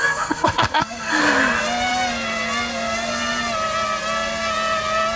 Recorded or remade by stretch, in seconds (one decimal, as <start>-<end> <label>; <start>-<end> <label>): 0.0-1.2 remade; 1.2-5.2 recorded